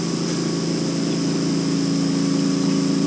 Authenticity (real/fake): real